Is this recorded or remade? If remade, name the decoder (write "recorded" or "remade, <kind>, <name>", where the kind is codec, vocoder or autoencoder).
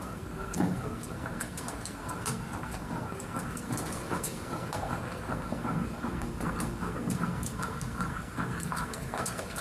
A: remade, codec, SNAC